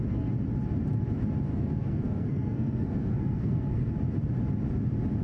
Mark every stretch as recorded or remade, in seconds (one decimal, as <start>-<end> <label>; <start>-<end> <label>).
0.0-1.5 recorded; 1.5-3.9 remade; 3.9-5.2 recorded